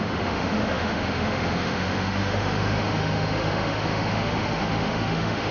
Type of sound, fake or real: fake